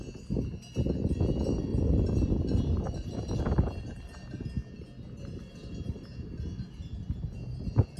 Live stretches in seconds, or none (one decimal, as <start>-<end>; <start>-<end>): 0.0-1.7; 3.4-8.0

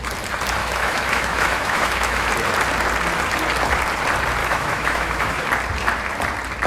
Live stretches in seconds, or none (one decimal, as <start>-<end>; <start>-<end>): 0.0-0.6; 2.3-4.4; 5.4-6.7

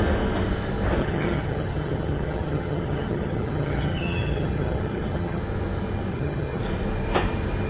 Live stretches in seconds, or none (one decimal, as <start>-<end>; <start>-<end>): 0.0-1.0; 5.4-6.1; 6.6-7.7